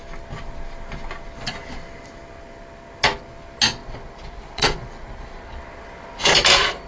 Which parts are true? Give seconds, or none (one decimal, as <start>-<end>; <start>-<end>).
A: 0.0-3.8; 5.6-6.9